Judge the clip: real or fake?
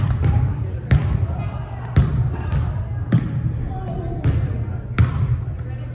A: real